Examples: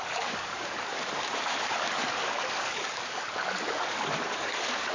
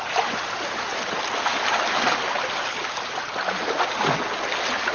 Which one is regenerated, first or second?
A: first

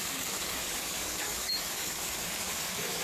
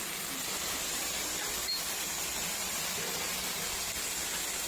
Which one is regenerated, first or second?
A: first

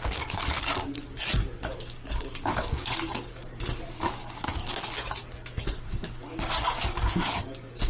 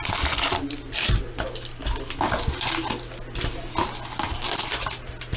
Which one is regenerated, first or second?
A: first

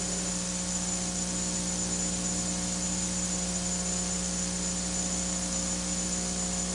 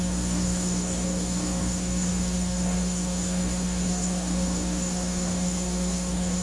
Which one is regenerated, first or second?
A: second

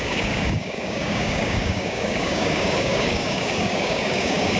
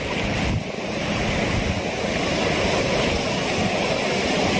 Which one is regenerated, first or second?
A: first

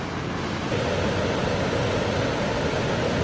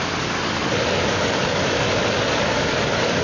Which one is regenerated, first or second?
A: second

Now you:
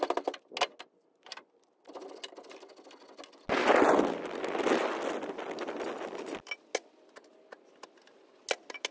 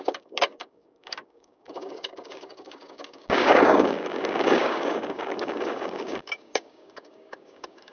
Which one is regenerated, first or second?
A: second